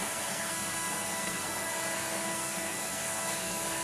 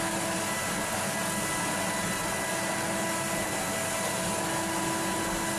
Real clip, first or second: second